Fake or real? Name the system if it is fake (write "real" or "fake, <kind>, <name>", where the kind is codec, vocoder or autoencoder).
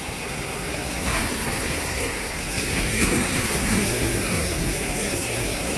fake, codec, SNAC